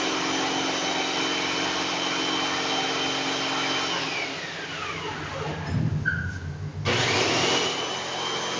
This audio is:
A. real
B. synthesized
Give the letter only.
A